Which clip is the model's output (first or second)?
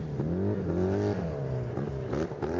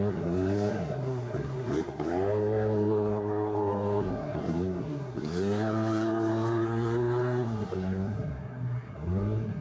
second